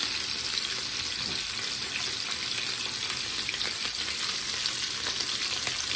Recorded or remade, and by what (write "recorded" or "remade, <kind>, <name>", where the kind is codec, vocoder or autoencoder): recorded